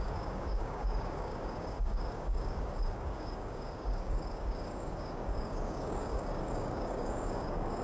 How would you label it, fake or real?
fake